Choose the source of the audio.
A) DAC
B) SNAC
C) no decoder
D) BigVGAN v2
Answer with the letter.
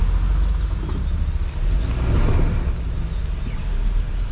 C